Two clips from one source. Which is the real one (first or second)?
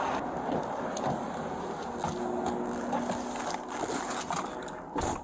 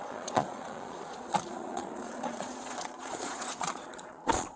first